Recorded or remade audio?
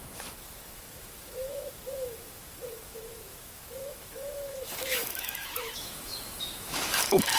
remade